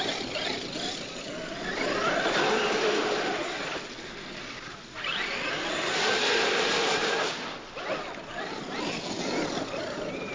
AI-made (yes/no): no